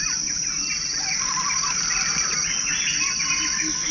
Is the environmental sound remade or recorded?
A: recorded